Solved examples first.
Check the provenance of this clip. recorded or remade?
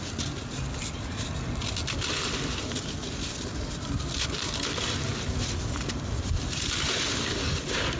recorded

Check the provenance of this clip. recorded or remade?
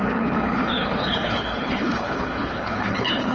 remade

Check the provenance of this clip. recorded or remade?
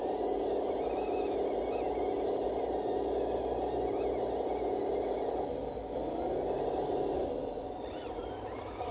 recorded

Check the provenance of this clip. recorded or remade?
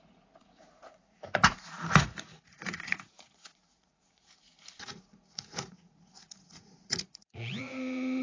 remade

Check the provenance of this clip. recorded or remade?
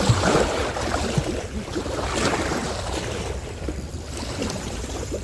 recorded